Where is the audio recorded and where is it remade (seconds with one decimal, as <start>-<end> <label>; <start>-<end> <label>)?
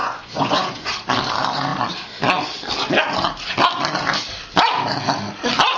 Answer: 0.0-0.9 remade; 0.9-5.8 recorded